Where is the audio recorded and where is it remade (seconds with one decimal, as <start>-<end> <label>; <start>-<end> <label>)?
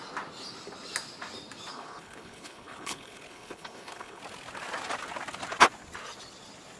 0.0-1.7 recorded; 1.7-4.2 remade; 4.2-6.8 recorded